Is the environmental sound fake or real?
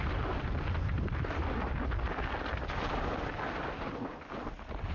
real